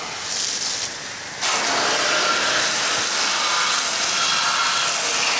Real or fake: real